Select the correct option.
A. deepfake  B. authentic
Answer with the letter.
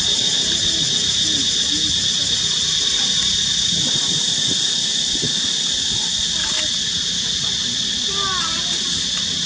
B